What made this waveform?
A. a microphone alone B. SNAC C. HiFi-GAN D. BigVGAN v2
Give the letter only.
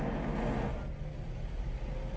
A